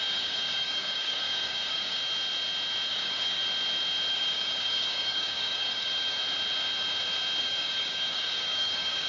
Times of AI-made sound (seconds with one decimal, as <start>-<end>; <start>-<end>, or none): 0.0-2.0; 2.9-3.4; 4.1-6.2; 7.4-9.1